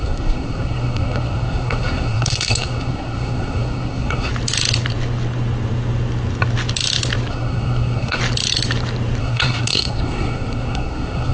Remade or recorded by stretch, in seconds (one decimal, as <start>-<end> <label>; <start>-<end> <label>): 0.0-4.3 remade; 4.3-7.3 recorded; 7.3-8.2 remade; 8.2-9.2 recorded; 9.2-11.3 remade